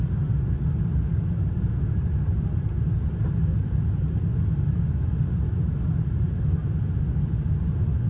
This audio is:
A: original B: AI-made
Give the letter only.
A